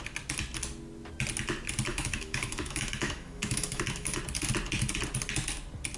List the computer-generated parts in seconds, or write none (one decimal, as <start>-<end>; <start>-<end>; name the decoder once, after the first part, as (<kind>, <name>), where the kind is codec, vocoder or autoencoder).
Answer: 1.9-4.2 (autoencoder, DAC-VAE)